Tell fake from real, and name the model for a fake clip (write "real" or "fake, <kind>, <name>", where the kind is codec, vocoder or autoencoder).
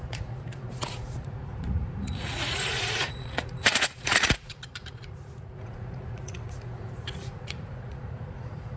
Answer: fake, vocoder, Vocos